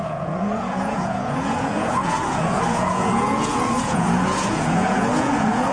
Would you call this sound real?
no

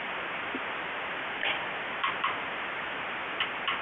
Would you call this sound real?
yes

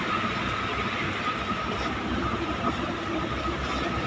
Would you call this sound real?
yes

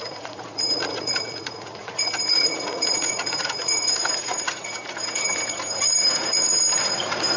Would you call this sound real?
no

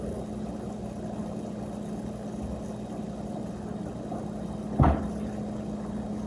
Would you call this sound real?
yes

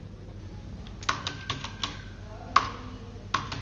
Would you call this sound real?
yes